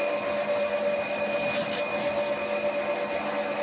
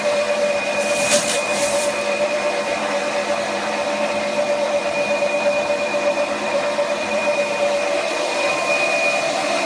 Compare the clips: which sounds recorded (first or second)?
first